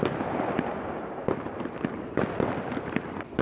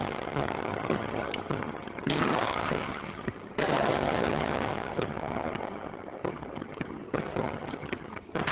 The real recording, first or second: first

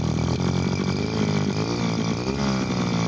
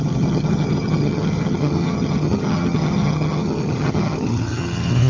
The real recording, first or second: first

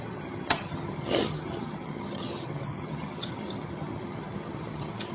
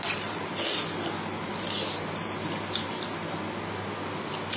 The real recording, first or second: second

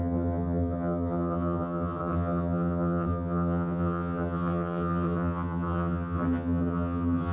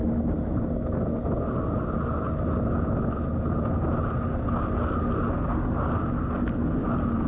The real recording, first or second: second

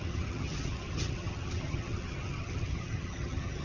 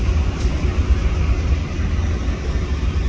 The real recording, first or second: second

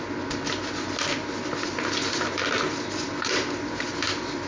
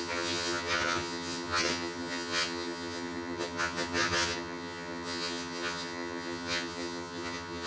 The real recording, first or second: first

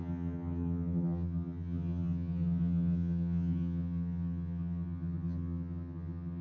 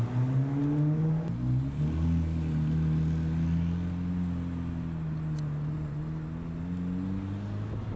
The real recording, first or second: second